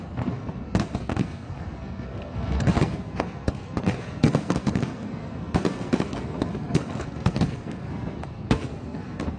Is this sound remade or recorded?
remade